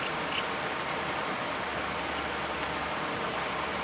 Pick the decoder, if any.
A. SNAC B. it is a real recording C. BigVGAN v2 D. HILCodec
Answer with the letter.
B